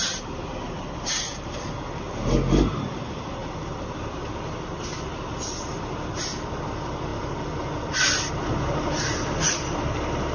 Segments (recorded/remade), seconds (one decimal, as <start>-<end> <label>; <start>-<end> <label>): 0.0-10.3 recorded